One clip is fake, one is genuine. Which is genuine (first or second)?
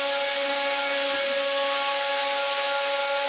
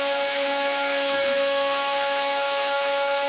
first